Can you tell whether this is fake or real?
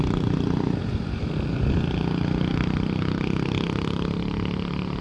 fake